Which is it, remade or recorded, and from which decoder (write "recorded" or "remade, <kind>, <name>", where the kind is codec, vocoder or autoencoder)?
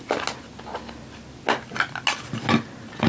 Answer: recorded